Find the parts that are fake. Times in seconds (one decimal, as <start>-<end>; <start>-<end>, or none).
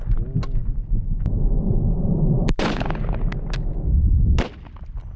none